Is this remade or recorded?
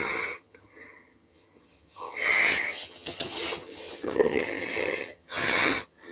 remade